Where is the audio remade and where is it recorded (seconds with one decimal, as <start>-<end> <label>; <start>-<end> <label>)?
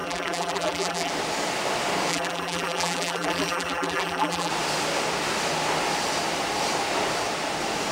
0.0-1.1 remade; 1.1-2.1 recorded; 2.1-4.5 remade; 4.5-7.9 recorded